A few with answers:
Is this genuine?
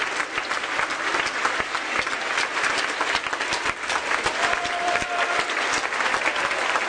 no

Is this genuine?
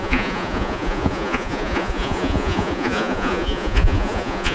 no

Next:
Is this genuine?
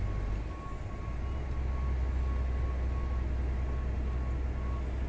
yes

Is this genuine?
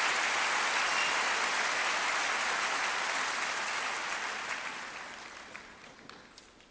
yes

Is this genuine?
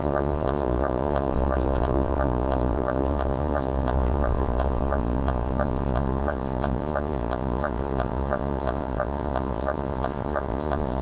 no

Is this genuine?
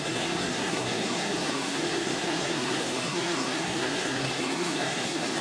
no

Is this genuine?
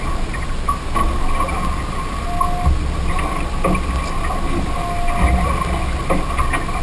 yes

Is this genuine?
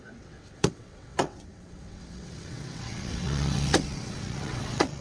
no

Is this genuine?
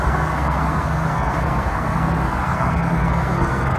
no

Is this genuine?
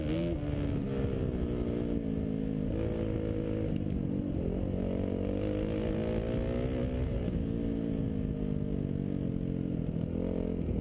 yes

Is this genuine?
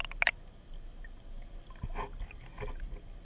yes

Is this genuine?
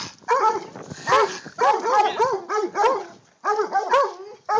yes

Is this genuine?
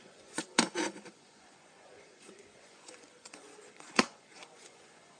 no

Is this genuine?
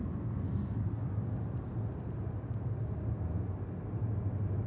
yes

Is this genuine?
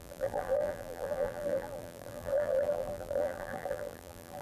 no